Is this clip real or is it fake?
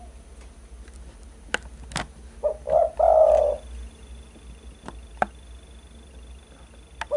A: real